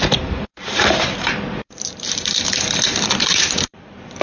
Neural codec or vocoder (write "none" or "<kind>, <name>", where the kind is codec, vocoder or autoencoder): vocoder, BigVGAN v2